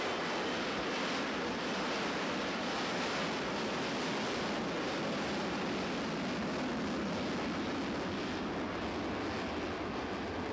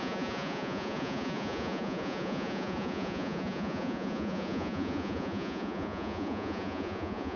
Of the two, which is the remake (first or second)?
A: second